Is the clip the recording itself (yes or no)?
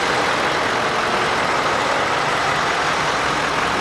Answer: yes